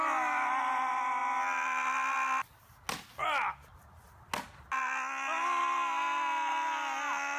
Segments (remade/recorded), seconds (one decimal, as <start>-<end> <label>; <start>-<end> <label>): 0.0-7.4 recorded